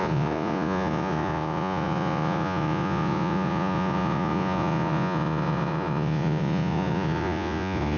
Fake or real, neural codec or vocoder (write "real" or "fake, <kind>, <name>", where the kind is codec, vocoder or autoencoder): fake, vocoder, Vocos